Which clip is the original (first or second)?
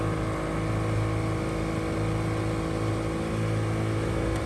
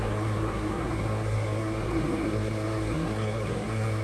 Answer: first